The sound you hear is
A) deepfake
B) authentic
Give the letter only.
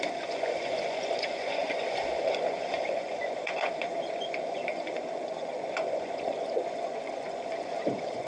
A